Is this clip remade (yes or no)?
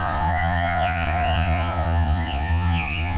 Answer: yes